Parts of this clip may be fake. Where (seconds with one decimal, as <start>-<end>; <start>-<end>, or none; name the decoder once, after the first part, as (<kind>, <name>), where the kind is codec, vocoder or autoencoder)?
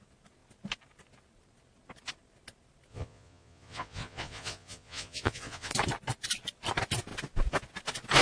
2.9-5.7 (vocoder, Vocos)